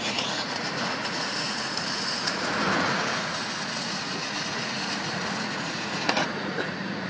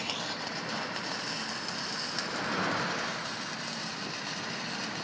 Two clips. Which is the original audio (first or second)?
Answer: second